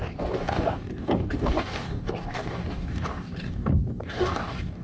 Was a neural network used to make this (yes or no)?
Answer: yes